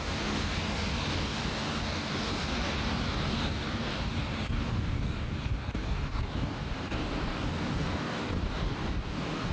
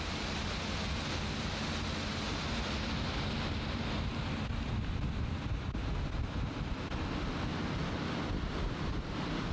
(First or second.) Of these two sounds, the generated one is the first